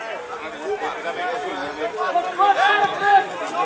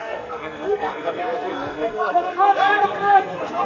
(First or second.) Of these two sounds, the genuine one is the first